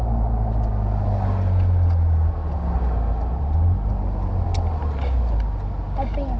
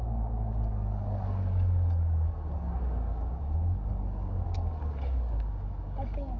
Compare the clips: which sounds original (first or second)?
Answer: first